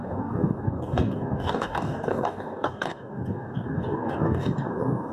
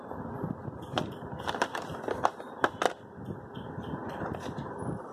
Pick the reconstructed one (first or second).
first